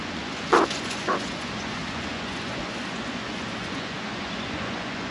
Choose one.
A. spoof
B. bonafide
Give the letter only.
A